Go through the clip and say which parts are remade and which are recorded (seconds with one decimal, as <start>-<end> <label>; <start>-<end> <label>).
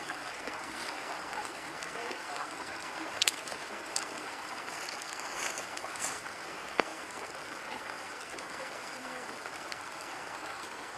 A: 0.0-11.0 remade